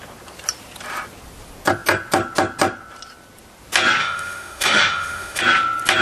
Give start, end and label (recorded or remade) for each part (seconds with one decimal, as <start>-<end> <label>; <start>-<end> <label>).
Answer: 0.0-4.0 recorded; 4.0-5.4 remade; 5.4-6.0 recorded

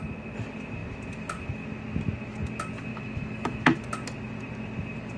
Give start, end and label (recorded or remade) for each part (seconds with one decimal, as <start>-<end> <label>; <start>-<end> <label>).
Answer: 0.0-2.9 recorded; 2.9-3.8 remade; 3.8-5.2 recorded

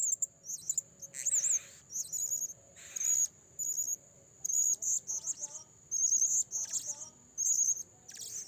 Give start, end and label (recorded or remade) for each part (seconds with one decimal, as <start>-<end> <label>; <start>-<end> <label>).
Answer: 0.0-3.9 recorded; 3.9-5.1 remade; 5.1-8.5 recorded

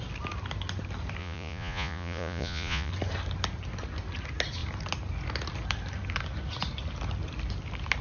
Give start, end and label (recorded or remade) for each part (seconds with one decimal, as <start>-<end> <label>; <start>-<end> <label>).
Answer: 0.0-1.2 recorded; 1.2-2.9 remade; 2.9-8.0 recorded

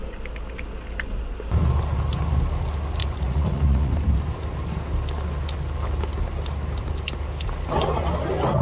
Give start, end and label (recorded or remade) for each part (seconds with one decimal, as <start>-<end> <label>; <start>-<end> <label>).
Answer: 0.0-3.0 recorded; 3.0-3.9 remade; 3.9-8.6 recorded

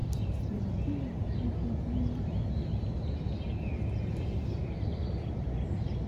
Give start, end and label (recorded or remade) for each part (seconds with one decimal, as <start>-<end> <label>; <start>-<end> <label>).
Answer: 0.0-0.6 remade; 0.6-6.1 recorded

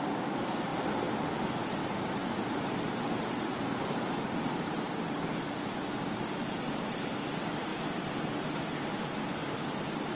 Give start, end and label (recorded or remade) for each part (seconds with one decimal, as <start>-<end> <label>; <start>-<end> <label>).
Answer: 0.0-1.8 recorded; 1.8-4.1 remade; 4.1-9.4 recorded; 9.4-10.2 remade